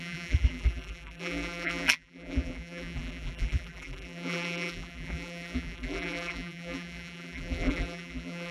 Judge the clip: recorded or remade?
remade